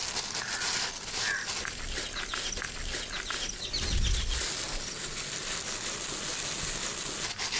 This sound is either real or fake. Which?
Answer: real